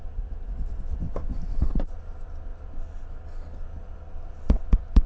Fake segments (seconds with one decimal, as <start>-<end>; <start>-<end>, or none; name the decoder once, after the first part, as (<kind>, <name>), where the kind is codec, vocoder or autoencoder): none

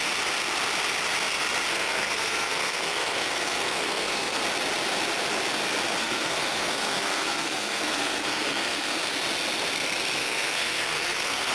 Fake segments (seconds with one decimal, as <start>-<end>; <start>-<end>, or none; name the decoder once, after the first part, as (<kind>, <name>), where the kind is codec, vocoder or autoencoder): 1.7-4.4 (codec, SNAC); 6.0-9.1; 10.2-11.5

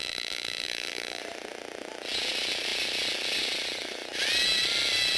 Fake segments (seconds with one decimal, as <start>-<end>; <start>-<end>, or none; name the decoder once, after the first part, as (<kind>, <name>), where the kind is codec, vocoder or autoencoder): 0.0-1.2 (vocoder, BigVGAN v2)

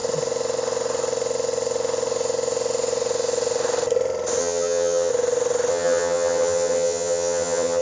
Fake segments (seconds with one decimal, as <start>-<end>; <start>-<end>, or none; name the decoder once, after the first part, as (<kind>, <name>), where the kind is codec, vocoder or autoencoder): 4.4-5.1 (vocoder, HiFi-GAN); 5.7-7.8

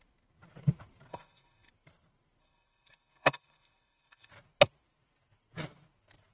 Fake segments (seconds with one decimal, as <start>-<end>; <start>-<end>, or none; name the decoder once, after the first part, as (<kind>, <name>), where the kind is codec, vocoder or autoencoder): 1.1-1.7 (codec, SNAC); 2.4-4.3

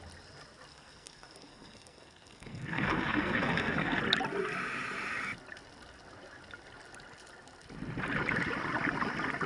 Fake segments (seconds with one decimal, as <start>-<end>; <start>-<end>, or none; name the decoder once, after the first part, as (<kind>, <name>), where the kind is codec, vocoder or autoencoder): 0.7-4.0 (codec, SNAC)